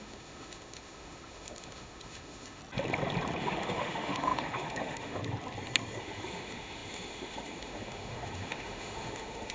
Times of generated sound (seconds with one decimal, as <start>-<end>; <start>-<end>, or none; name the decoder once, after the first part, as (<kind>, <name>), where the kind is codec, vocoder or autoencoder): 0.0-2.6 (autoencoder, DAC-VAE); 3.4-5.2; 6.0-9.5